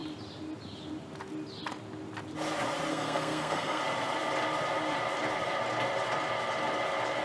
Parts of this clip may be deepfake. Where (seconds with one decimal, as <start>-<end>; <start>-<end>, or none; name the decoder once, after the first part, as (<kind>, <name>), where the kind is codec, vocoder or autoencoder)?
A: 2.9-3.8 (codec, SNAC)